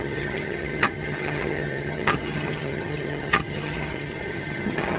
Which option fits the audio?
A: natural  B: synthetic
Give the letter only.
B